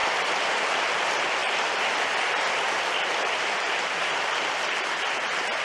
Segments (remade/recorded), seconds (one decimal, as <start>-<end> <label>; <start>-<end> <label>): 0.0-0.7 remade; 0.7-5.6 recorded